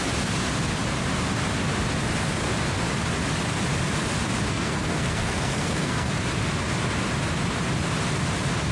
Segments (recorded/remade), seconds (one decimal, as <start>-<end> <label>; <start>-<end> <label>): 0.0-4.5 recorded; 4.5-6.1 remade; 6.1-8.7 recorded